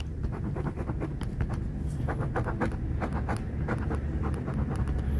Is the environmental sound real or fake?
real